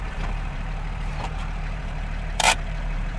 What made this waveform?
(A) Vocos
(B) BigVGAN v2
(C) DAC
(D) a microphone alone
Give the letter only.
B